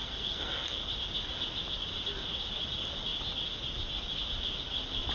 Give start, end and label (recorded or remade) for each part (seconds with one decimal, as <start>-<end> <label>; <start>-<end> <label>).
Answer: 0.0-0.9 remade; 0.9-5.1 recorded